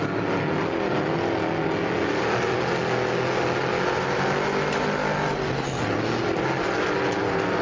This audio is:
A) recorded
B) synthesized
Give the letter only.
A